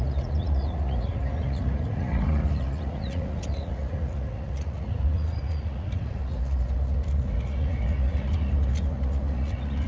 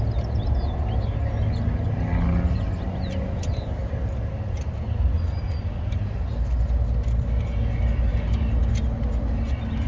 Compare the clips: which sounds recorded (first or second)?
second